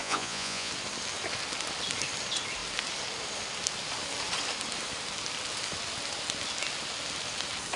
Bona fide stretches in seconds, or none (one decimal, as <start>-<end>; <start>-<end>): 0.7-7.8